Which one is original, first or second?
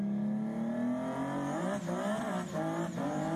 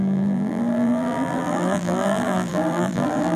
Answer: first